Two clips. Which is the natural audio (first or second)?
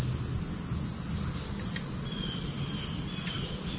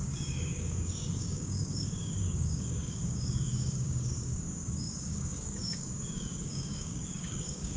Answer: first